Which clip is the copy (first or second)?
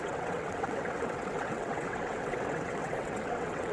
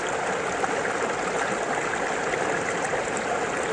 first